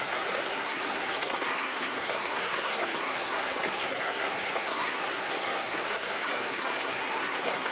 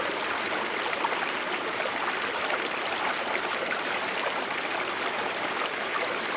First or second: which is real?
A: second